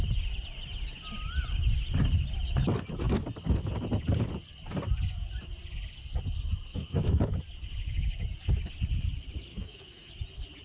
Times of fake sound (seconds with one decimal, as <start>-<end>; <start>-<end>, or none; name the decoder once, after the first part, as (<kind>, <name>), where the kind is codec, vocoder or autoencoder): 6.7-7.4 (autoencoder, DAC-VAE); 9.5-10.1